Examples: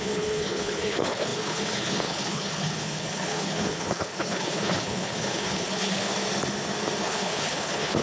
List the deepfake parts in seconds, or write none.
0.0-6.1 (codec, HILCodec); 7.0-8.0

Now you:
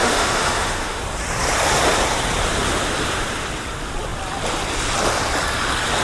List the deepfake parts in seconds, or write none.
0.0-1.0 (autoencoder, DAC-VAE)

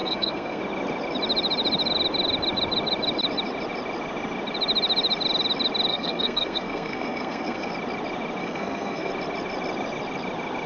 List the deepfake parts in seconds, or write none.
0.0-0.6 (codec, SNAC); 5.9-7.7; 8.4-9.1

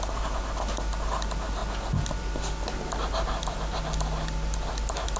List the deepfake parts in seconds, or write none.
none